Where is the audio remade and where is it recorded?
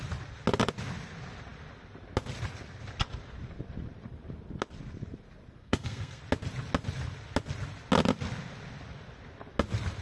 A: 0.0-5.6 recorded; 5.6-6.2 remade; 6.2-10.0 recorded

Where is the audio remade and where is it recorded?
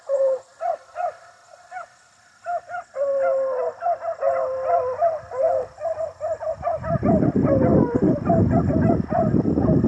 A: 0.0-9.9 recorded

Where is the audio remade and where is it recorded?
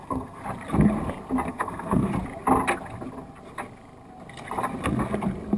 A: 0.0-0.4 remade; 0.4-1.5 recorded; 1.5-2.1 remade; 2.1-5.6 recorded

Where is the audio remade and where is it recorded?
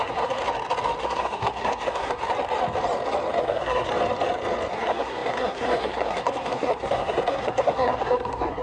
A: 0.0-0.4 remade; 0.4-1.0 recorded; 1.0-2.2 remade; 2.2-3.4 recorded; 3.4-3.9 remade; 3.9-4.7 recorded; 4.7-8.6 remade